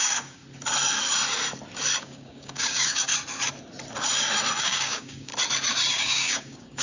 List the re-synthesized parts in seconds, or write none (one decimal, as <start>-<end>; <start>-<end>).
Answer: 0.0-0.4; 2.0-3.1; 4.6-5.3; 6.0-6.8